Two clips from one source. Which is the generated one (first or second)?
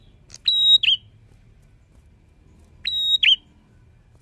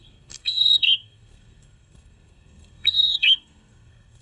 second